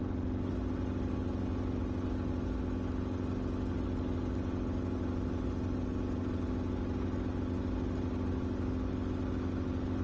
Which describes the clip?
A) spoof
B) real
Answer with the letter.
B